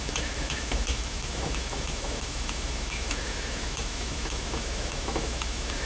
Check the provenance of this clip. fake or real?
fake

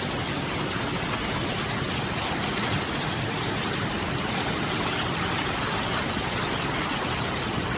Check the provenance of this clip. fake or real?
real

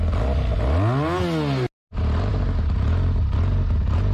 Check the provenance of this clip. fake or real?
real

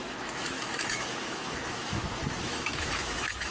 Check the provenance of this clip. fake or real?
fake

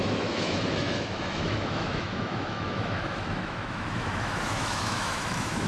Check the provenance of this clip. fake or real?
fake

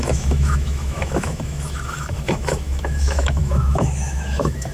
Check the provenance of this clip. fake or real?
fake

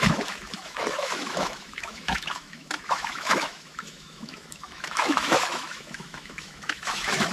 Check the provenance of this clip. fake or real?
fake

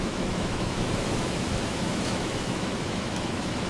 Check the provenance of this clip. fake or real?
fake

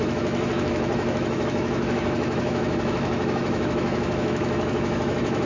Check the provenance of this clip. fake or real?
fake